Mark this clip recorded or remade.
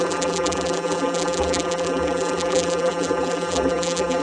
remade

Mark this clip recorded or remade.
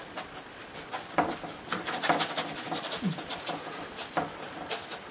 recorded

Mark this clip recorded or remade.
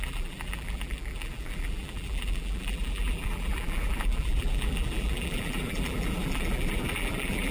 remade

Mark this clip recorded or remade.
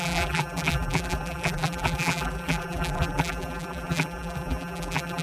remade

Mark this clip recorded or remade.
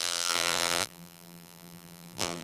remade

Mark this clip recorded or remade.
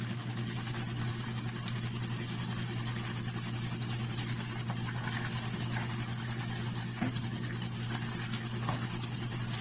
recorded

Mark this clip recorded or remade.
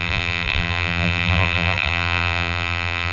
remade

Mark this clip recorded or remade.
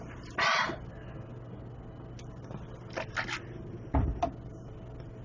recorded